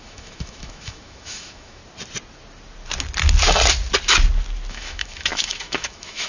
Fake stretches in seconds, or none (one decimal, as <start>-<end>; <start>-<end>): 0.0-1.8; 4.7-6.3